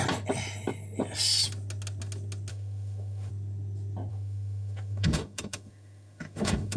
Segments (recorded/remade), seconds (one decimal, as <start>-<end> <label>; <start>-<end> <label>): 0.0-2.5 recorded; 2.5-3.3 remade; 3.3-4.1 recorded; 4.1-6.8 remade